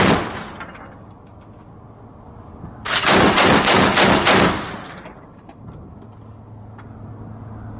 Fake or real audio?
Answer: real